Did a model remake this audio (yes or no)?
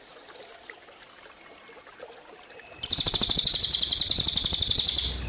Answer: no